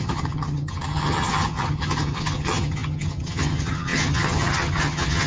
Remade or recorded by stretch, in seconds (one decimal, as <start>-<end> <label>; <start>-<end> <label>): 0.0-5.3 remade